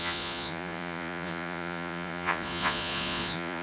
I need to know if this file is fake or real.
fake